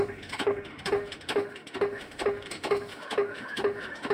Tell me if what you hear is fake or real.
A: fake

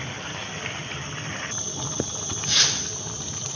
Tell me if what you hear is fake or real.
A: real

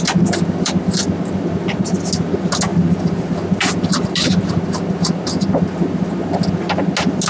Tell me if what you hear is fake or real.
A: real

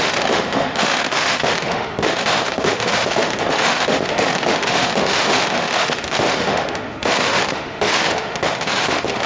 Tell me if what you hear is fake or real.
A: fake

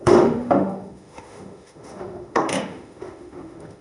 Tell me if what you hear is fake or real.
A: fake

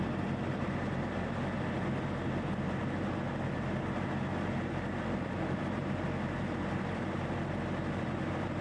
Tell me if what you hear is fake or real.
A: real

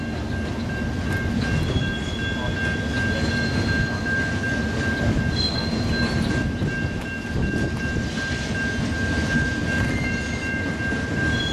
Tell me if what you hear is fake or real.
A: real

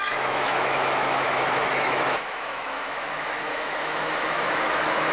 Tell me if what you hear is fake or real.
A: fake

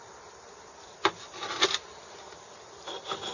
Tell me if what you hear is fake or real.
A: real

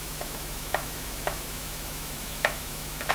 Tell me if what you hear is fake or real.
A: fake